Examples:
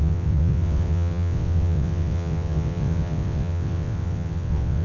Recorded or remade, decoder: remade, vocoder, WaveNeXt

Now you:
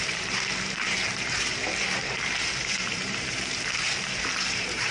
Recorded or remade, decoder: remade, vocoder, BigVGAN v2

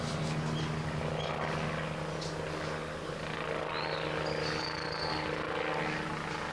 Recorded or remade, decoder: recorded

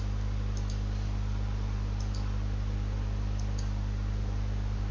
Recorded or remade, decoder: recorded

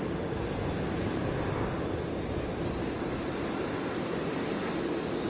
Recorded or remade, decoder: recorded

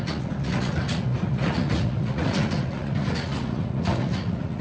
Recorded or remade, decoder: remade, vocoder, Vocos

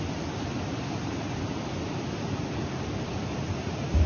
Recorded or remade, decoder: recorded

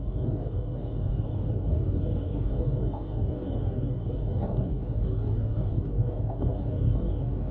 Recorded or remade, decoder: remade, codec, DAC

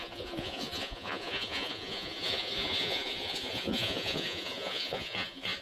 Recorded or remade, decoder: remade, vocoder, Vocos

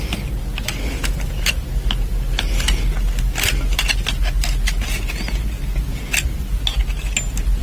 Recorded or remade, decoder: recorded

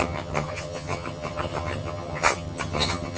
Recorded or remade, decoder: remade, vocoder, HiFi-GAN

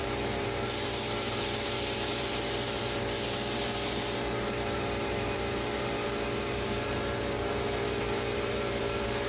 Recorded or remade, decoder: remade, vocoder, BigVGAN v2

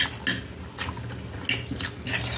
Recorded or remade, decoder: recorded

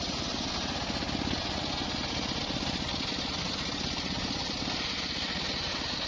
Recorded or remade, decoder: recorded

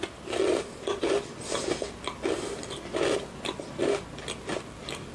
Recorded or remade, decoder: recorded